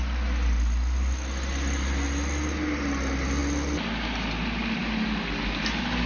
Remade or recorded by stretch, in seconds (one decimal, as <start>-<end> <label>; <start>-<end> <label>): 0.0-6.1 recorded